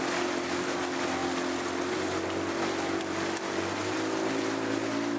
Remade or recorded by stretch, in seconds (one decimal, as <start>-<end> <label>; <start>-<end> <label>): 0.0-5.2 recorded